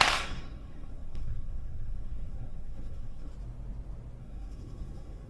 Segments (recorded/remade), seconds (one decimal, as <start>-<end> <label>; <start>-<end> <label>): 0.0-3.3 remade; 3.3-4.2 recorded; 4.2-5.3 remade